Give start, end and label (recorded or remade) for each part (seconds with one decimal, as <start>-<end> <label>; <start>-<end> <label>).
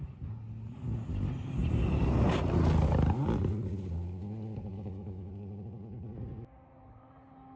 0.0-4.7 recorded; 4.7-5.3 remade; 5.3-7.6 recorded